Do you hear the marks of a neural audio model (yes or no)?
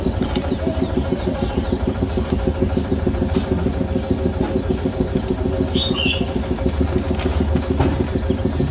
no